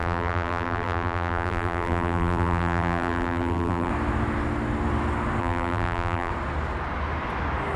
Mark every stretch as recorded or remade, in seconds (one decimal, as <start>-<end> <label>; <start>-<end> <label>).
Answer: 0.0-3.9 remade; 3.9-5.4 recorded; 5.4-6.3 remade; 6.3-7.8 recorded

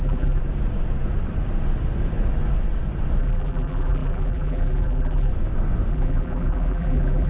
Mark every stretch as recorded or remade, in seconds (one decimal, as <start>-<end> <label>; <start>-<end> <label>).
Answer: 0.0-0.4 remade; 0.4-3.2 recorded; 3.2-5.3 remade; 5.3-5.9 recorded; 5.9-7.3 remade

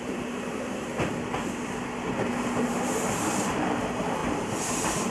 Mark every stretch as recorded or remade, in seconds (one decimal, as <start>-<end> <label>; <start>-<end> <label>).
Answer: 0.0-0.9 remade; 0.9-2.7 recorded; 2.7-5.1 remade

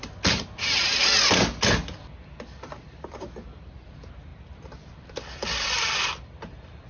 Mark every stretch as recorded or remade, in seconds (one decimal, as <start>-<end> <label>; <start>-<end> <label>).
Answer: 0.0-4.3 recorded; 4.3-6.5 remade; 6.5-6.9 recorded